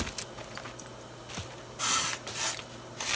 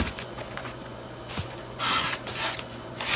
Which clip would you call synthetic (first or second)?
second